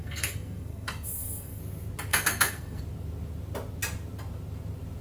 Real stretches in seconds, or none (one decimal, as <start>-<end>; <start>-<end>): 1.6-2.1; 2.8-5.0